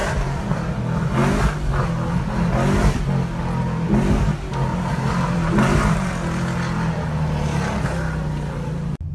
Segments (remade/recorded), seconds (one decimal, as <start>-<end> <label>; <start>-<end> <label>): 0.0-0.6 remade; 0.6-4.7 recorded; 4.7-9.1 remade